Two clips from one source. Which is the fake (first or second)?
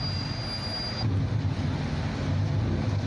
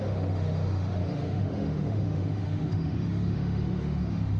second